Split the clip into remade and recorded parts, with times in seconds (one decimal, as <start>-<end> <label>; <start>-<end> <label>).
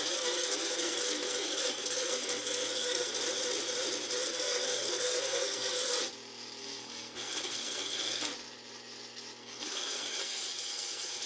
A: 0.0-3.1 remade; 3.1-4.2 recorded; 4.2-6.0 remade; 6.0-6.6 recorded; 6.6-8.3 remade; 8.3-9.4 recorded; 9.4-11.3 remade